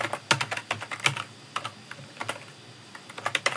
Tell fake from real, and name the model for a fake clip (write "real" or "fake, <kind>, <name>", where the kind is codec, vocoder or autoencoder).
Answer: real